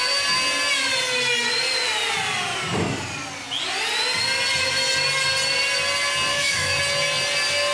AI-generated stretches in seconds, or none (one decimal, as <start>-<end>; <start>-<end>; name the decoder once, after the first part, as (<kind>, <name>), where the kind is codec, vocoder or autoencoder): 6.3-6.8 (autoencoder, DAC-VAE)